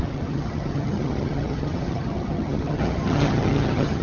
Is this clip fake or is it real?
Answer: fake